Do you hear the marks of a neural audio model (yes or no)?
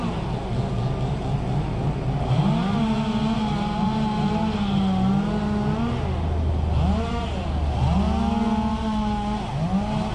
no